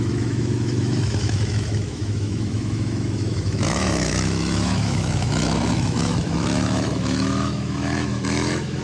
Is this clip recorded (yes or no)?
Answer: no